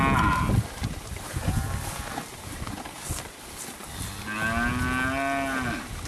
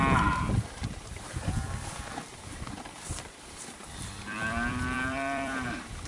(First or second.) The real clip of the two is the first